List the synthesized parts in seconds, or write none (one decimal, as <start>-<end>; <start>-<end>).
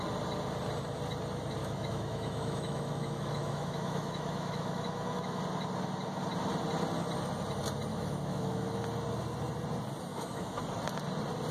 1.6-5.4; 7.9-8.8; 10.1-10.6